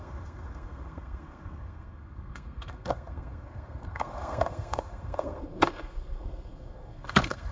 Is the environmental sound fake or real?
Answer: fake